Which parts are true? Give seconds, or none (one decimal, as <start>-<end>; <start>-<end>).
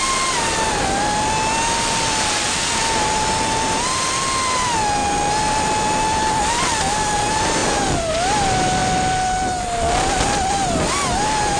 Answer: 0.0-11.6